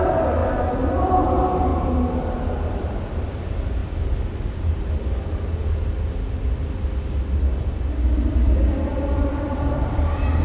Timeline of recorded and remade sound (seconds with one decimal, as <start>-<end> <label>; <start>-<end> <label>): 0.0-1.7 remade; 1.7-2.7 recorded; 2.7-3.8 remade; 3.8-7.3 recorded; 7.3-10.4 remade